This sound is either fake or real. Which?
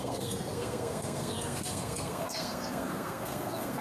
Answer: fake